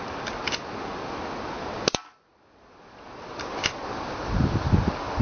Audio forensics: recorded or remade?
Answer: recorded